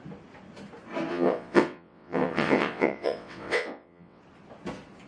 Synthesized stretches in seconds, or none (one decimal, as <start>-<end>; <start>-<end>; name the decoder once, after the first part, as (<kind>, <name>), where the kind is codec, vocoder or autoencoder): 1.1-4.2 (vocoder, WaveNeXt)